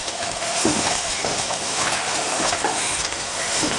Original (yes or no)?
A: no